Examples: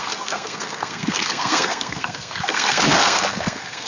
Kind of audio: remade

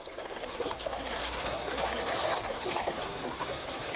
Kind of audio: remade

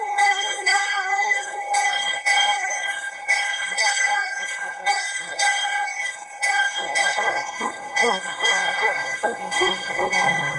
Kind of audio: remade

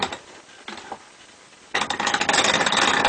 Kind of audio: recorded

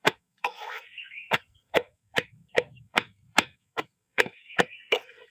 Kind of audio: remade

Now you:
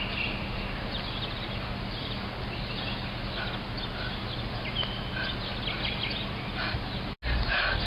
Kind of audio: recorded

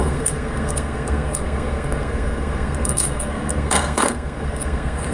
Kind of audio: remade